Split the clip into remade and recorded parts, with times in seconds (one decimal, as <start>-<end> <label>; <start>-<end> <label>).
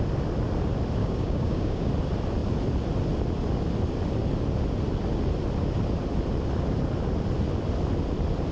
0.0-1.0 recorded; 1.0-1.9 remade; 1.9-8.5 recorded